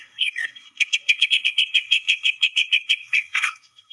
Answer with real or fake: fake